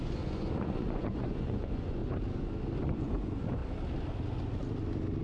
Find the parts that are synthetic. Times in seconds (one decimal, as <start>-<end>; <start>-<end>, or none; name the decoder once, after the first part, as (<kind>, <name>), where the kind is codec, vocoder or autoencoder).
0.0-2.0 (vocoder, Vocos); 2.8-3.6